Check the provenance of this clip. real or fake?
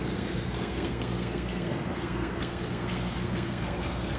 fake